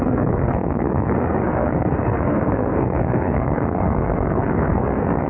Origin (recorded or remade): remade